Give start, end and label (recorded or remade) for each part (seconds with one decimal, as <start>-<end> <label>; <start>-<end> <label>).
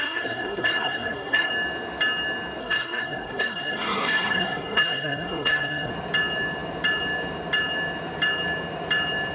0.0-1.5 remade; 1.5-2.6 recorded; 2.6-5.9 remade; 5.9-9.3 recorded